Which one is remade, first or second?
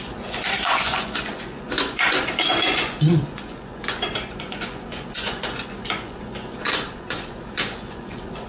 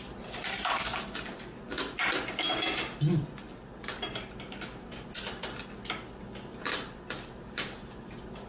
first